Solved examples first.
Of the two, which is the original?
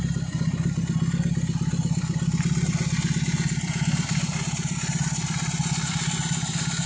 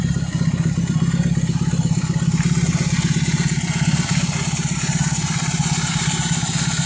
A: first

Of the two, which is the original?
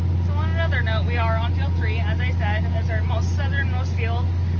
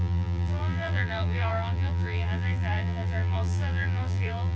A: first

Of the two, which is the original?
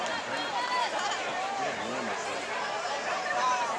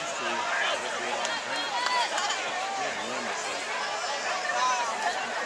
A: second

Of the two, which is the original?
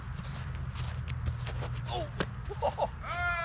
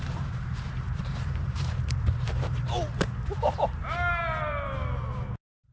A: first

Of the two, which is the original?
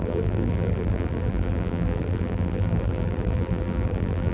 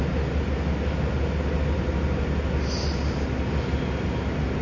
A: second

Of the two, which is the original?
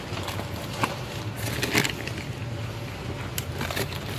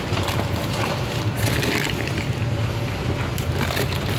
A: first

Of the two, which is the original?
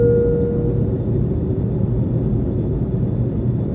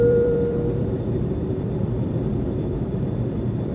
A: first